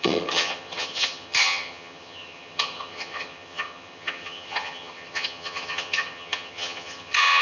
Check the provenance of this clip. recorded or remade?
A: remade